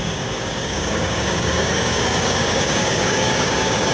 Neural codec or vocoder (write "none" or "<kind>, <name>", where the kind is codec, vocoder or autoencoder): codec, DAC